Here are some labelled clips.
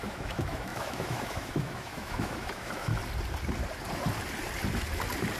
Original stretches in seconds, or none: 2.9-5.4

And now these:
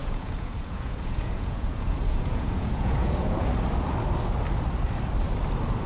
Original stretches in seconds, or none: 3.5-5.9

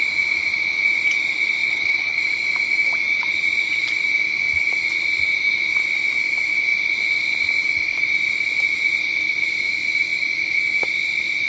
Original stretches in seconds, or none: 0.0-1.6; 2.2-11.5